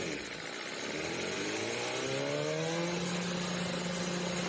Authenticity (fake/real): real